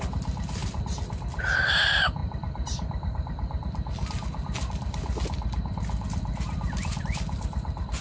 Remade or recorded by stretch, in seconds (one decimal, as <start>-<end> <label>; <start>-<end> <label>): 0.0-8.0 recorded